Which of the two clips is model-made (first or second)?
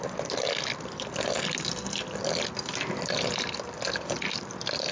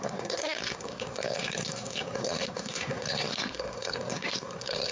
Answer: second